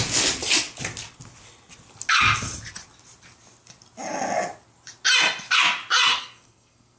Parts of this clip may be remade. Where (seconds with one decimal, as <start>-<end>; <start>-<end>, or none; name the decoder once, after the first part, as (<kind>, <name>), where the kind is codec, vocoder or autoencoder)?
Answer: 6.1-7.0 (codec, SNAC)